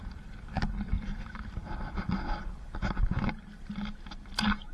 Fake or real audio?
real